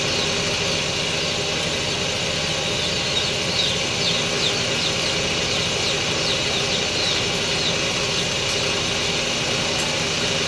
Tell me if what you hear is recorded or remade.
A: recorded